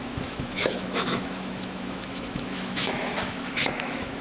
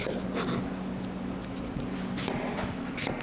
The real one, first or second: second